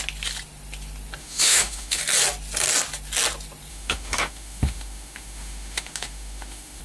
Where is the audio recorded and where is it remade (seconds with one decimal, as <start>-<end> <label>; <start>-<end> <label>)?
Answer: 0.0-1.2 recorded; 1.2-2.0 remade; 2.0-3.7 recorded; 3.7-6.8 remade